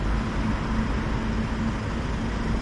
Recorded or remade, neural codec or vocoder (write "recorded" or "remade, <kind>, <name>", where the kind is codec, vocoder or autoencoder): recorded